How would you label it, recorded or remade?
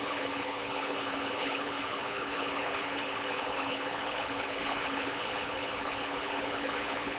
remade